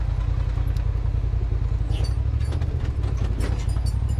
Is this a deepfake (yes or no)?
no